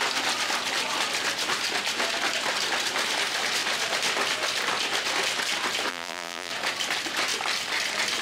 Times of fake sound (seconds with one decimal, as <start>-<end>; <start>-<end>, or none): 5.9-6.5

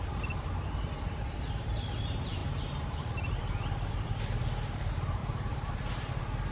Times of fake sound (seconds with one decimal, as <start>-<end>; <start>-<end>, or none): 2.4-4.2; 5.2-6.1

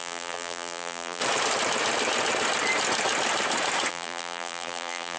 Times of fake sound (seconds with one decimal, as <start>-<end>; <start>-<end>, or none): 0.0-1.2; 3.9-5.2

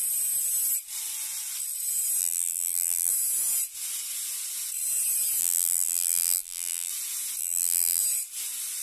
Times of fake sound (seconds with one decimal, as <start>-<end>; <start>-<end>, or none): 2.2-3.1; 5.4-6.9; 7.4-8.0

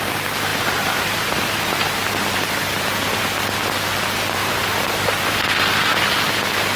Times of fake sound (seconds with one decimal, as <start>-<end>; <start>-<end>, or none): 0.5-3.2; 4.4-5.4

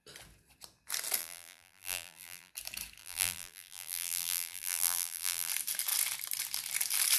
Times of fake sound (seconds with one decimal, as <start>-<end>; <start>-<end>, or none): 1.2-2.5; 3.0-5.5

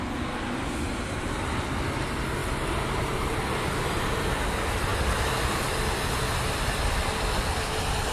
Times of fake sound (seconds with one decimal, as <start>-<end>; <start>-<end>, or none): 2.4-3.2; 4.9-7.6

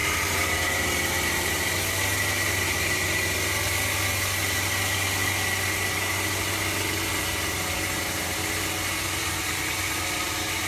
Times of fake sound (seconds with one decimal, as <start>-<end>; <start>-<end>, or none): 0.0-0.8